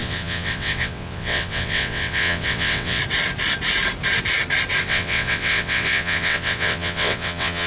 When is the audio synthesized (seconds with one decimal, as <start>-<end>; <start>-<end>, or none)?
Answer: 0.0-3.0; 4.8-7.7